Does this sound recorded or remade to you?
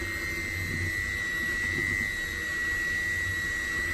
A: recorded